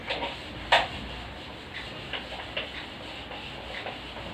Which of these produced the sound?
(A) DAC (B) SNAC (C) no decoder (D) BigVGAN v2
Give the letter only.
C